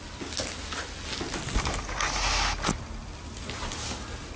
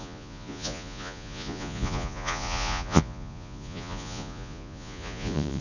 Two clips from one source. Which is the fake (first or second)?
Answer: second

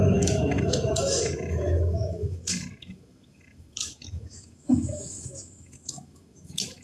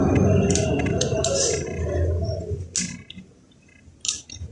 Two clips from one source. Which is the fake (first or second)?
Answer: first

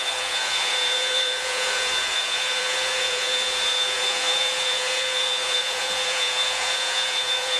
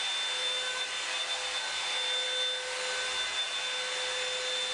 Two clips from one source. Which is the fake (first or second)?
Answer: first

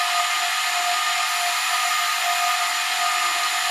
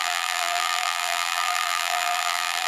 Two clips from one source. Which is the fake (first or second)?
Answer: second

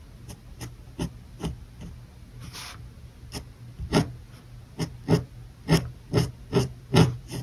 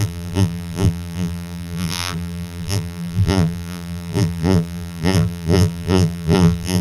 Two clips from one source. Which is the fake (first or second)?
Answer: second